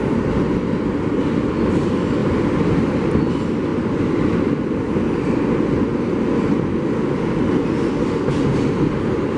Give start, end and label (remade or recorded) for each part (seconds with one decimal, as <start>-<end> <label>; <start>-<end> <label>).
0.0-2.2 recorded; 2.2-3.3 remade; 3.3-9.4 recorded